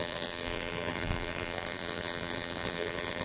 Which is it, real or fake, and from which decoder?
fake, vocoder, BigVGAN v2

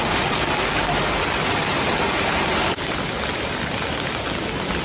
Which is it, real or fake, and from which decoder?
real